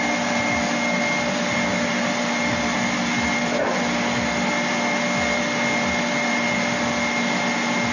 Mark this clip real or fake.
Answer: real